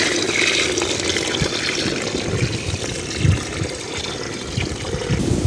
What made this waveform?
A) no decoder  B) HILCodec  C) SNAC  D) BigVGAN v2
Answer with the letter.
A